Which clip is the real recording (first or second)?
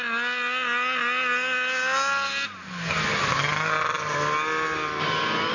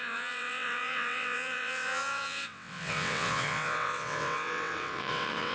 first